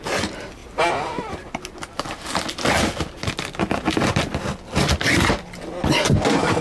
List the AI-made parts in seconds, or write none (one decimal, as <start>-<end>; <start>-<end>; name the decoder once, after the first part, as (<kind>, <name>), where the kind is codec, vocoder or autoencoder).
none